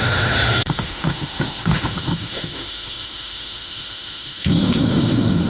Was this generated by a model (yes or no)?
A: yes